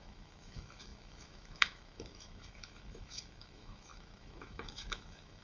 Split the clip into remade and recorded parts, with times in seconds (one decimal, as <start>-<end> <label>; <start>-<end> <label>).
0.0-5.4 remade